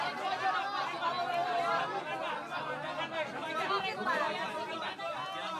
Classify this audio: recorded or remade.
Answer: recorded